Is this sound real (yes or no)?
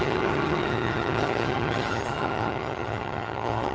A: no